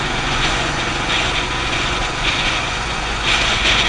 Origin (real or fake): fake